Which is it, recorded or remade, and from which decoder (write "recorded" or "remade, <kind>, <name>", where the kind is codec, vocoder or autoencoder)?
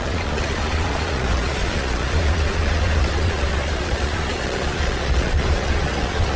remade, vocoder, Vocos